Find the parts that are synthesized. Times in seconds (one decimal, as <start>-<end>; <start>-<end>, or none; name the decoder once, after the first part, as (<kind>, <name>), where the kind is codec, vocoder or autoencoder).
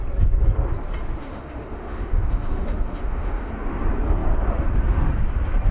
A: 1.2-3.5 (autoencoder, DAC-VAE)